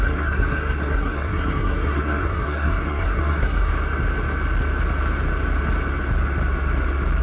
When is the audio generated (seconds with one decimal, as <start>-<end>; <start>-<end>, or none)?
0.0-3.7